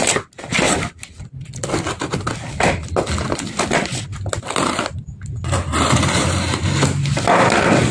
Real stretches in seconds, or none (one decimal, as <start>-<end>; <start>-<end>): 0.0-7.9